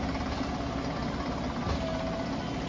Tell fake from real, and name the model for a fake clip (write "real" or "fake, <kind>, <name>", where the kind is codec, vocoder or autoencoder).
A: real